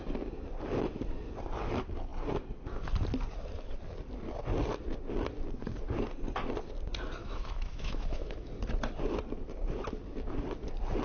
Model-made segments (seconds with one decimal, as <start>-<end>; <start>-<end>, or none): 7.2-8.5